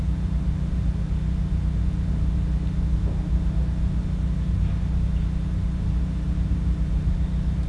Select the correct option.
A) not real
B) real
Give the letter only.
B